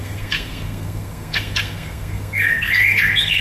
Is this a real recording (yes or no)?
no